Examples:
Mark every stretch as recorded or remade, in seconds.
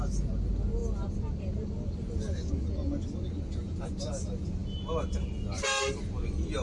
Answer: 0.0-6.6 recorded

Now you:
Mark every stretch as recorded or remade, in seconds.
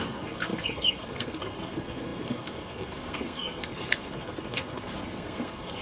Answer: 0.0-5.8 remade